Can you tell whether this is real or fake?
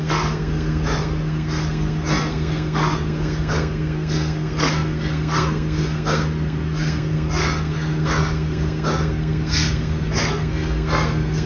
fake